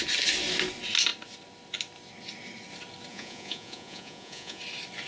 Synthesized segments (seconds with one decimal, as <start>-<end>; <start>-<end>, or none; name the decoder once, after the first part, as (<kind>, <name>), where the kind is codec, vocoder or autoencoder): 3.1-4.6 (vocoder, Vocos)

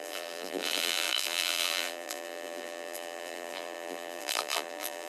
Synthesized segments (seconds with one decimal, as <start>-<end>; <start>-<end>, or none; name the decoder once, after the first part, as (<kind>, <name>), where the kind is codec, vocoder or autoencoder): 0.0-5.1 (vocoder, BigVGAN v2)

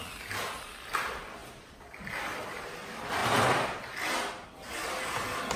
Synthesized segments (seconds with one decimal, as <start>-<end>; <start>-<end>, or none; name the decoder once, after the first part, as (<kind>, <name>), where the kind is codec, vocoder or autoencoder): none

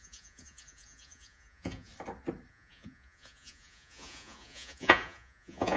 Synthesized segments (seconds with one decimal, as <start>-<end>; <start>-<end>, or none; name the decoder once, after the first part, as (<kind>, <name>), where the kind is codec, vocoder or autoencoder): 0.0-1.9 (vocoder, Vocos); 2.5-5.8